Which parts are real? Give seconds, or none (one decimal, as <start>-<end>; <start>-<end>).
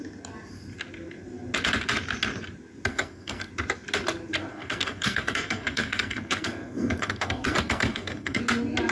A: 0.0-2.9; 3.5-4.5; 8.4-8.9